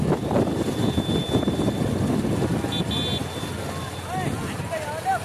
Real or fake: real